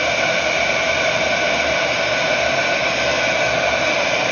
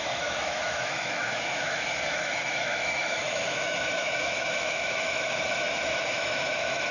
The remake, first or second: second